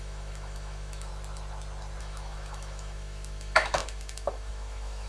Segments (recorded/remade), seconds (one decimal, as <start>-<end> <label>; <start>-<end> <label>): 0.0-1.1 remade; 1.1-2.0 recorded; 2.0-5.1 remade